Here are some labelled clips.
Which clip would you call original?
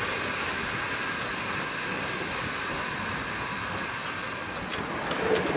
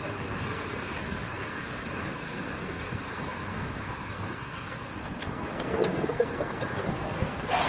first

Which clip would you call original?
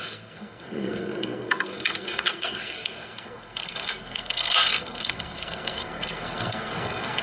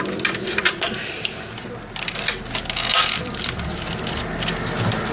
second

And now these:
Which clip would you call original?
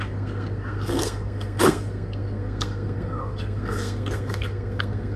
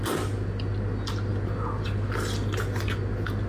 second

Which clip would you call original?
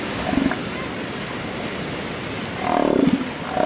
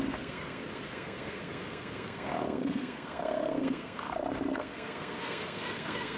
first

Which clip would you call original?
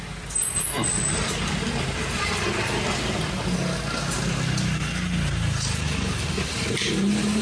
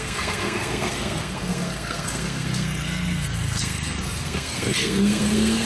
first